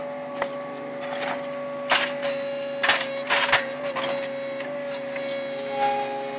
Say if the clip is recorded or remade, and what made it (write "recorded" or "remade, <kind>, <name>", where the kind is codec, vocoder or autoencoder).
recorded